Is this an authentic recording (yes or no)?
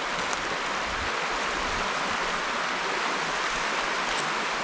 yes